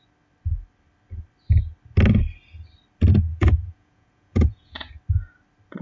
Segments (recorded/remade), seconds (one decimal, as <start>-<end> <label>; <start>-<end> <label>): 0.0-3.3 recorded; 3.3-4.9 remade; 4.9-5.8 recorded